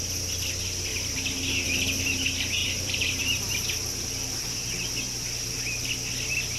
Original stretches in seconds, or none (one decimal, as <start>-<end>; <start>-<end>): 0.0-0.9; 2.0-2.6; 4.7-6.6